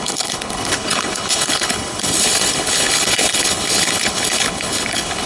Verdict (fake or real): fake